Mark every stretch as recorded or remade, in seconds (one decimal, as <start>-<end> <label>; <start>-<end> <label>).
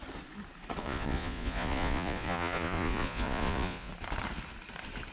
0.0-0.8 recorded; 0.8-3.9 remade; 3.9-5.1 recorded